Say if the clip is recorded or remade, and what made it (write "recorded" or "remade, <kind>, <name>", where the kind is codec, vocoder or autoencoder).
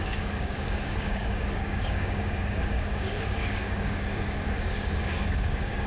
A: remade, codec, DAC